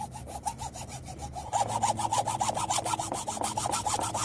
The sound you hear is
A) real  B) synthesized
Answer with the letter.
A